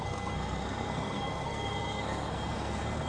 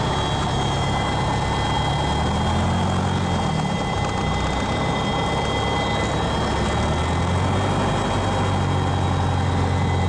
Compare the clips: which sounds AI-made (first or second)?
first